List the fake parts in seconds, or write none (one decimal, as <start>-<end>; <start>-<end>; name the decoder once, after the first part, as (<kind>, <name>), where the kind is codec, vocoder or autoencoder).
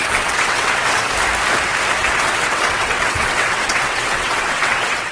0.0-1.1 (vocoder, WaveNeXt); 2.0-5.1